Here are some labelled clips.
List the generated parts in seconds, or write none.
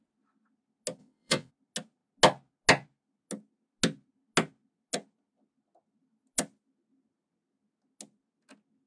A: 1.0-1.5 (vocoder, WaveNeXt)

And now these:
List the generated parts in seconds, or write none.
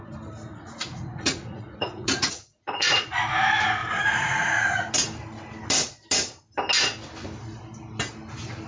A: 0.5-3.2 (vocoder, Vocos); 3.8-4.9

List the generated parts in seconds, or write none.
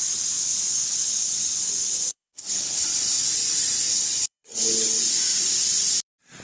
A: 2.1-3.2 (codec, HILCodec); 3.9-5.0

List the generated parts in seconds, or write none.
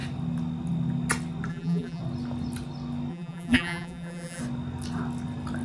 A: 1.5-2.0 (vocoder, BigVGAN v2); 3.1-4.4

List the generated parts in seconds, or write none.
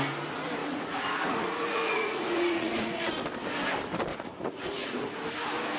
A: 0.6-3.1 (vocoder, Vocos); 4.1-5.2